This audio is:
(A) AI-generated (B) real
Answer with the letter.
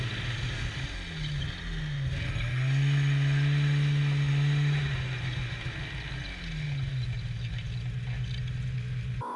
B